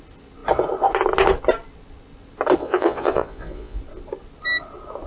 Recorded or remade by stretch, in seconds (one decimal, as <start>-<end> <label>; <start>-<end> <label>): 0.0-2.6 recorded; 2.6-3.8 remade; 3.8-5.1 recorded